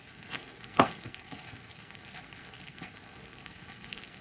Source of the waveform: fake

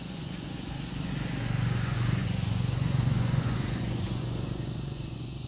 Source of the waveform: fake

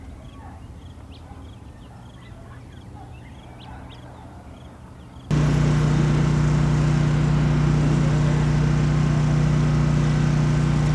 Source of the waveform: real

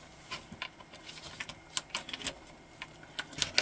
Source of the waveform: real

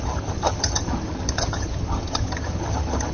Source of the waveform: fake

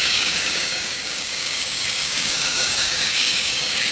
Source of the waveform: fake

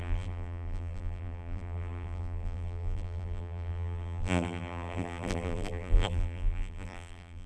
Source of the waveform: fake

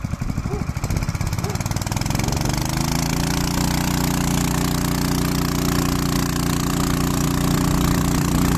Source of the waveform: real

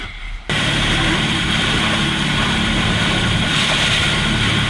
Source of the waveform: real